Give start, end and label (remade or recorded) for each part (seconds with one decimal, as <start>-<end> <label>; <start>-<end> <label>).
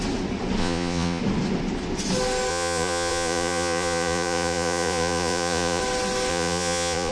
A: 0.0-0.6 recorded; 0.6-1.2 remade; 1.2-2.5 recorded; 2.5-5.8 remade; 5.8-6.3 recorded; 6.3-7.1 remade